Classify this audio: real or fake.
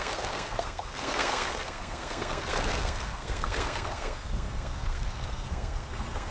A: fake